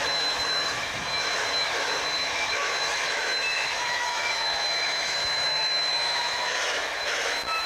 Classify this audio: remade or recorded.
remade